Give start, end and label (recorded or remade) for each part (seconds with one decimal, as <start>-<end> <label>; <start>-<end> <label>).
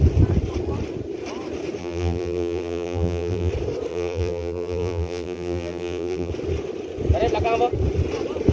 0.0-1.8 recorded; 1.8-3.5 remade; 3.5-3.9 recorded; 3.9-6.3 remade; 6.3-8.5 recorded